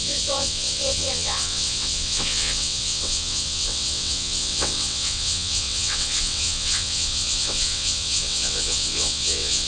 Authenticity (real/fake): fake